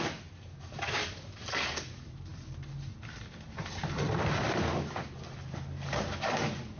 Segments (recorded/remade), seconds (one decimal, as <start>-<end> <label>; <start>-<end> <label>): 0.0-0.5 recorded; 0.5-1.1 remade; 1.1-6.8 recorded